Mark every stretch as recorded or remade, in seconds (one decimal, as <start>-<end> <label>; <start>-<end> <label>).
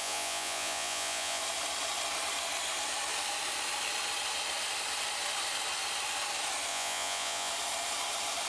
0.0-1.4 remade; 1.4-6.7 recorded; 6.7-7.5 remade; 7.5-8.5 recorded